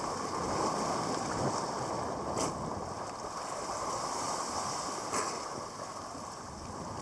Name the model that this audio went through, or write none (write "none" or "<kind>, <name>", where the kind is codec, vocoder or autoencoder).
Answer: none